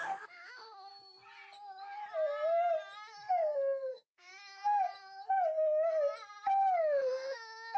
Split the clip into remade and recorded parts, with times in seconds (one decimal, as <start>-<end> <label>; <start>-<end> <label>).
0.0-0.9 remade; 0.9-3.9 recorded; 3.9-4.3 remade; 4.3-6.8 recorded; 6.8-7.8 remade